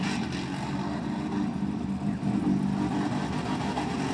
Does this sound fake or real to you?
real